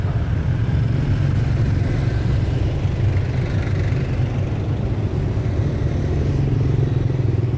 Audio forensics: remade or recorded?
recorded